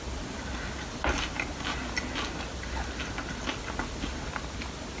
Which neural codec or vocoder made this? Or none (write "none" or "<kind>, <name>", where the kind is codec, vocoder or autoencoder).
none